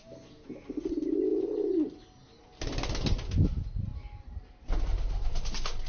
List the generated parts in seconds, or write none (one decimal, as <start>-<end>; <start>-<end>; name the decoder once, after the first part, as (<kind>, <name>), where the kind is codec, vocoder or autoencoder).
none